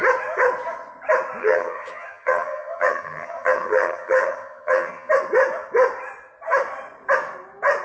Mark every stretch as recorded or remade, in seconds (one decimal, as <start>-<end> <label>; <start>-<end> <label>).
0.0-1.4 recorded; 1.4-5.1 remade; 5.1-7.8 recorded